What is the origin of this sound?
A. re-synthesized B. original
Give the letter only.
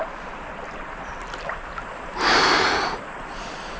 B